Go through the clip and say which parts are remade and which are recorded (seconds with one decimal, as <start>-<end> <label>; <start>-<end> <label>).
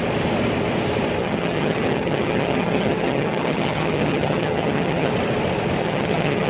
0.0-1.2 recorded; 1.2-5.1 remade; 5.1-5.8 recorded; 5.8-6.5 remade